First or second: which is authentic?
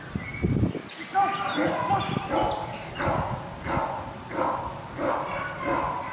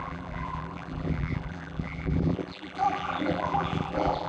first